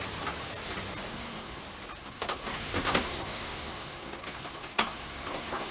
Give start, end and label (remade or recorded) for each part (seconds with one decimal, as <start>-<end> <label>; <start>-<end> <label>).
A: 0.0-1.1 recorded; 1.1-1.6 remade; 1.6-2.0 recorded; 2.0-5.7 remade